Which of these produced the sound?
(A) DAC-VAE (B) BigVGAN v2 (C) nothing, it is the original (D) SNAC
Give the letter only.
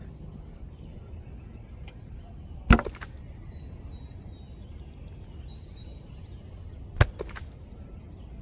C